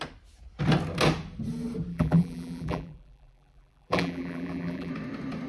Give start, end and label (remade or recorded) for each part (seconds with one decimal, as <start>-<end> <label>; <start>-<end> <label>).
0.0-1.9 recorded; 1.9-4.9 remade; 4.9-5.5 recorded